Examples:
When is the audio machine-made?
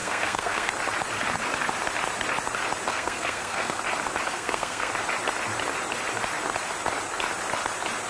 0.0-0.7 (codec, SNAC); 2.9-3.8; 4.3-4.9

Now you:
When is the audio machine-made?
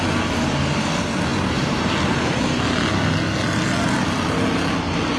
1.3-1.9 (vocoder, BigVGAN v2)